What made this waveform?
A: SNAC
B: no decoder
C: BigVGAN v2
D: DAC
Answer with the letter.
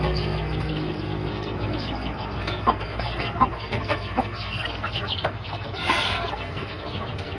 A